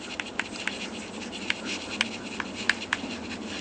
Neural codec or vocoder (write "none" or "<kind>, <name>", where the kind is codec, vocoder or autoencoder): none